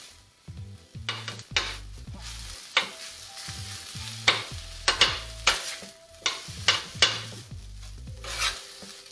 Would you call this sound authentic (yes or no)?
yes